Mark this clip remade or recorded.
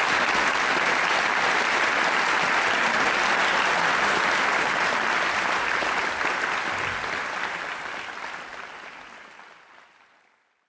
recorded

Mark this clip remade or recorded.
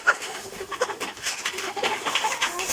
remade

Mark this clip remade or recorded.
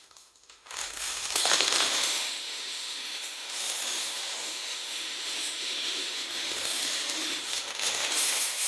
remade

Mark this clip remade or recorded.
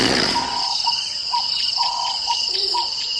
remade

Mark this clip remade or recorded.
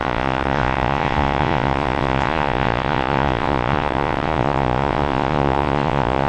remade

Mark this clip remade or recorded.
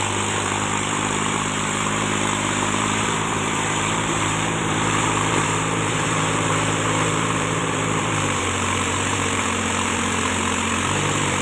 remade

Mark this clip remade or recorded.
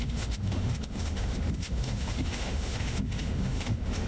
remade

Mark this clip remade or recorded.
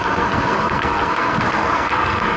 remade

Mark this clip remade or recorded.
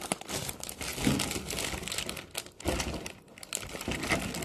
recorded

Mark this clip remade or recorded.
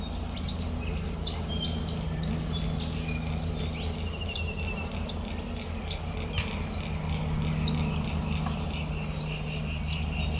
recorded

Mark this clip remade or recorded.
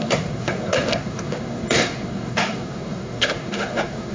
remade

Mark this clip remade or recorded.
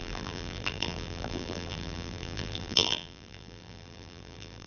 remade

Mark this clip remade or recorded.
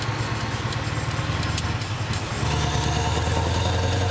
recorded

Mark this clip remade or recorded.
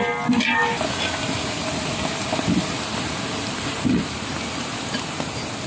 recorded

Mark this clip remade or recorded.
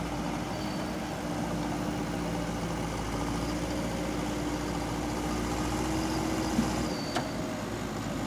recorded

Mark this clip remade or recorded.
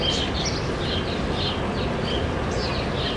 recorded